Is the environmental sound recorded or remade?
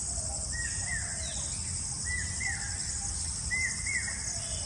recorded